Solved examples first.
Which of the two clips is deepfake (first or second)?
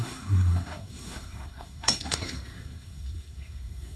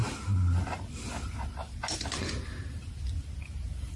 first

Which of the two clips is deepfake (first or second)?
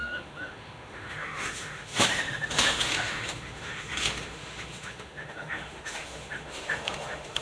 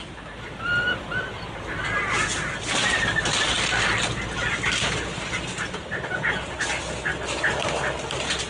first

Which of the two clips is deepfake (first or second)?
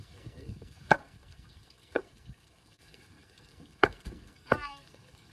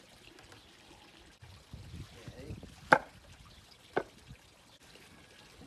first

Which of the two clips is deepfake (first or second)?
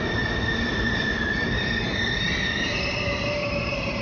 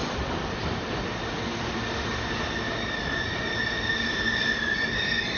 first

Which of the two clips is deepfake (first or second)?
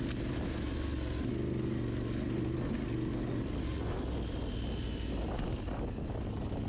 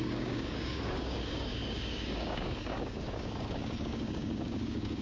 second